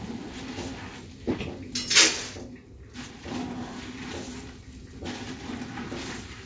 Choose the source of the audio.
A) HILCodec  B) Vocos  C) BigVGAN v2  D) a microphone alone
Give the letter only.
D